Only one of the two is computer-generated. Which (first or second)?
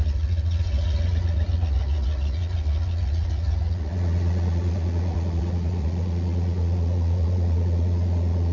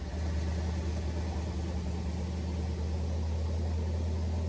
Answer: first